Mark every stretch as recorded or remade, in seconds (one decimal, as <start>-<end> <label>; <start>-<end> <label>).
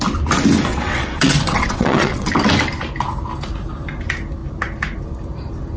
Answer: 0.0-0.7 recorded; 0.7-2.3 remade; 2.3-5.8 recorded